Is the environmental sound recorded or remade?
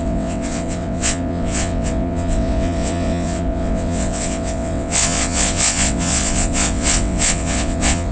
remade